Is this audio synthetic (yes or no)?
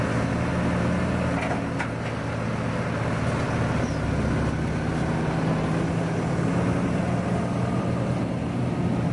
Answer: no